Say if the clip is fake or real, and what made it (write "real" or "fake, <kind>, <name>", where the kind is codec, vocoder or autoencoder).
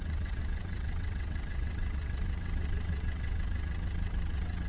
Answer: fake, vocoder, WaveNeXt